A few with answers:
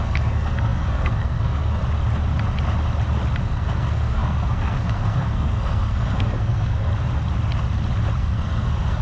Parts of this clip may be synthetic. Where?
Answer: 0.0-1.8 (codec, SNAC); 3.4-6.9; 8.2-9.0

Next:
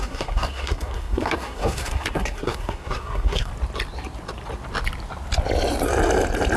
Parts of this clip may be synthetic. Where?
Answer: 0.0-3.5 (codec, SNAC)

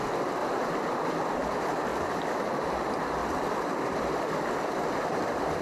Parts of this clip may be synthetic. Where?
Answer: none

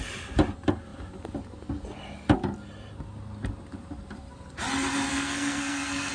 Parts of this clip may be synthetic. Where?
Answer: 5.1-6.1 (codec, SNAC)

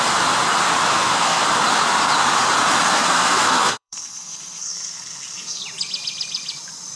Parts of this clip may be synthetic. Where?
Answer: 0.9-1.4 (codec, SNAC); 2.9-5.6

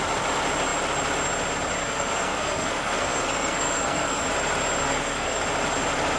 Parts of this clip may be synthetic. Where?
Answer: 1.8-4.3 (codec, SNAC); 4.8-5.4

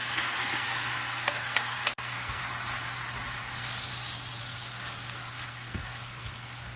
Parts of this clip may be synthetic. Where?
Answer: 0.0-2.4 (codec, SNAC); 3.4-3.9; 4.4-6.8